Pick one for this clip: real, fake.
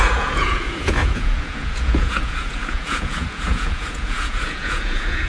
fake